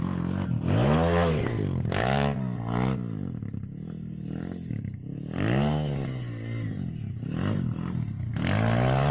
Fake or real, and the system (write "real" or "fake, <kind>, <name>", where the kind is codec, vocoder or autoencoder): real